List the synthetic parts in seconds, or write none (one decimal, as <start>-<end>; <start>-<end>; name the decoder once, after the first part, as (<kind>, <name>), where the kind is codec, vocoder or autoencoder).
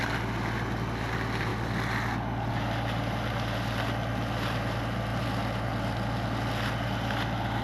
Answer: none